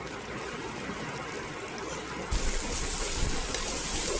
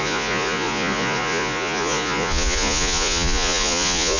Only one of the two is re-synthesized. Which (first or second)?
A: second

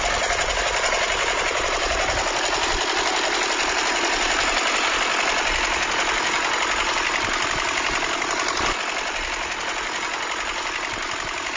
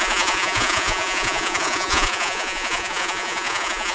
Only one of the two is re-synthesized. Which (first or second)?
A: second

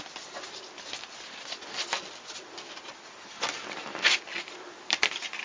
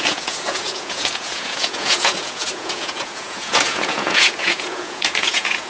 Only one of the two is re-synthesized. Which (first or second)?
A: second